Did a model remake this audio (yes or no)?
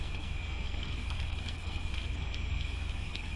yes